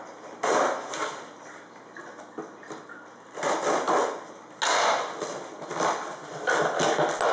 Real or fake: real